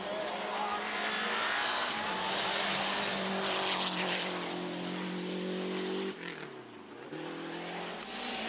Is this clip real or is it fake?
real